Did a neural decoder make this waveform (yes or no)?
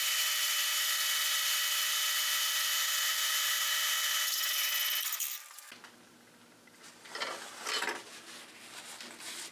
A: no